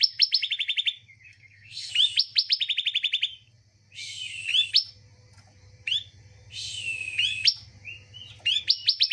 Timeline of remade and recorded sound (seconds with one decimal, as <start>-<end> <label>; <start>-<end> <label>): 0.0-1.3 recorded; 1.3-1.9 remade; 1.9-9.1 recorded